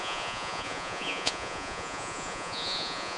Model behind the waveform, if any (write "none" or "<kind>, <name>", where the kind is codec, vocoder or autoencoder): vocoder, Vocos